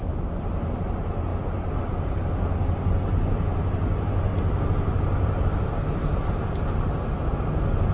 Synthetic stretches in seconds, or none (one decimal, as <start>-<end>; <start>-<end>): none